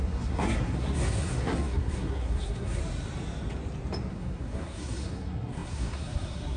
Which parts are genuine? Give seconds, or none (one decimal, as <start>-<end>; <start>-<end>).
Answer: 2.8-4.1